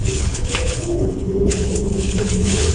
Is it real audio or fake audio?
fake